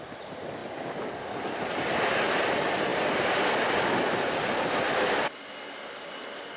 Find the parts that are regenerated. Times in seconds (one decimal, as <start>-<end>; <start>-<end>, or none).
none